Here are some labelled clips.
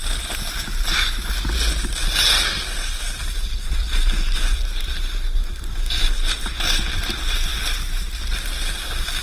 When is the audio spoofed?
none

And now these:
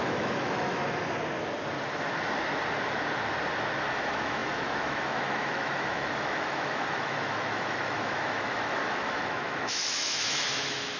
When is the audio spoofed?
0.0-0.8 (autoencoder, DAC-VAE); 3.9-11.0

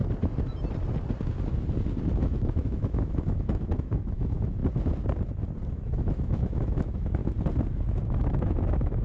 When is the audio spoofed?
2.2-4.6 (autoencoder, DAC-VAE); 5.7-7.2; 8.0-9.0

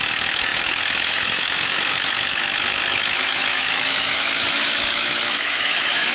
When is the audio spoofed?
0.0-6.1 (autoencoder, DAC-VAE)

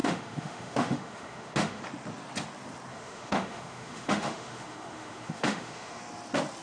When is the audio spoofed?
0.0-1.8 (autoencoder, DAC-VAE); 2.9-6.0